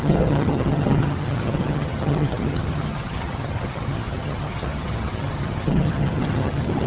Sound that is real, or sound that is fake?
fake